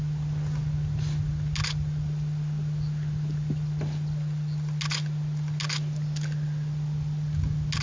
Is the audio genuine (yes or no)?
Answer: yes